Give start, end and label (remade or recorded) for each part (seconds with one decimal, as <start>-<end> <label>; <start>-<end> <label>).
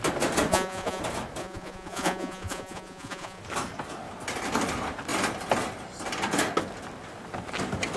0.0-0.5 recorded; 0.5-1.0 remade; 1.0-1.4 recorded; 1.4-3.4 remade; 3.4-8.0 recorded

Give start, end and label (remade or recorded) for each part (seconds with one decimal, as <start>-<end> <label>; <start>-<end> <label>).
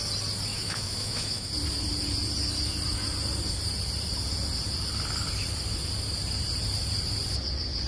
0.0-0.5 recorded; 0.5-1.5 remade; 1.5-7.9 recorded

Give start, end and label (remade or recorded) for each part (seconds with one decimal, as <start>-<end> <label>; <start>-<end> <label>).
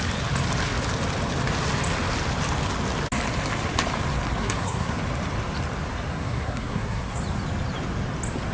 0.0-4.4 recorded; 4.4-5.0 remade; 5.0-6.1 recorded; 6.1-7.2 remade; 7.2-8.5 recorded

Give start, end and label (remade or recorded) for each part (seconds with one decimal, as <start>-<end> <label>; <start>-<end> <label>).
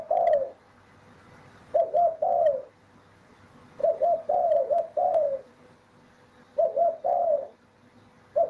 0.0-1.6 recorded; 1.6-2.2 remade; 2.2-3.8 recorded; 3.8-6.0 remade; 6.0-8.5 recorded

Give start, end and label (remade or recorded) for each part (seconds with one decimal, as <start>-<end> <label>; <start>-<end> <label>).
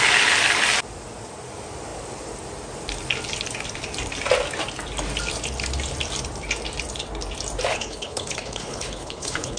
0.0-7.7 recorded; 7.7-9.6 remade